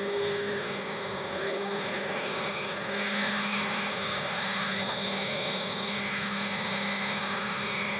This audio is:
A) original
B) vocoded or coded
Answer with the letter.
B